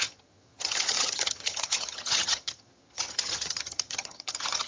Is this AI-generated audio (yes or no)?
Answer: yes